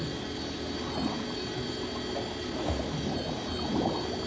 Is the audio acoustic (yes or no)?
yes